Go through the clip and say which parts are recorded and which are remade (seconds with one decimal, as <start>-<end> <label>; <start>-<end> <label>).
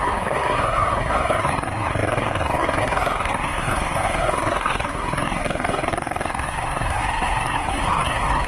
0.0-8.5 remade